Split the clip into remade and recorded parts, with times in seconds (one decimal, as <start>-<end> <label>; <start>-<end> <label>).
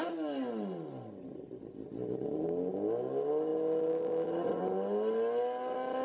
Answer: 0.0-6.0 recorded